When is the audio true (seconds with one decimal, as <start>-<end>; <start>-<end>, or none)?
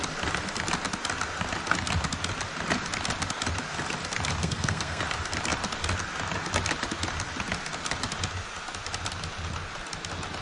0.0-4.4; 5.0-10.4